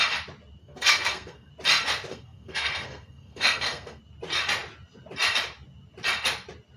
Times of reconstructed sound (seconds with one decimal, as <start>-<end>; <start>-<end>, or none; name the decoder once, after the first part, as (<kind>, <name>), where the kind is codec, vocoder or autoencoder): 0.6-1.5 (codec, SNAC); 2.1-4.0